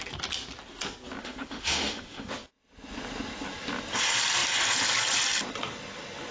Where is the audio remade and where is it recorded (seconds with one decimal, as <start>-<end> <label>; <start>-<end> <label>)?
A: 0.0-1.2 recorded; 1.2-2.3 remade; 2.3-6.3 recorded